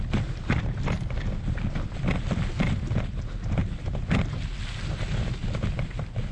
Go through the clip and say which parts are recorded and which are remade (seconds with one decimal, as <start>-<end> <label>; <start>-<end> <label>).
0.0-6.3 recorded